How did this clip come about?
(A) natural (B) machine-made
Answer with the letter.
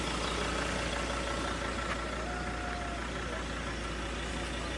A